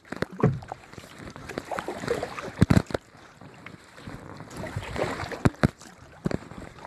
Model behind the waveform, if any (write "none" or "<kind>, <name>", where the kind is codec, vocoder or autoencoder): vocoder, BigVGAN v2